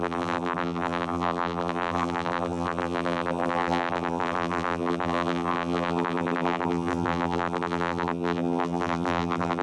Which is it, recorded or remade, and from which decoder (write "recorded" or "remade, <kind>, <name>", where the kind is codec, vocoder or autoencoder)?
remade, vocoder, BigVGAN v2